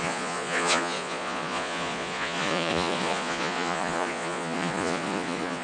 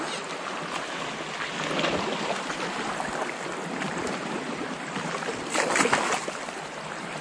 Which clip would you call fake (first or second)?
first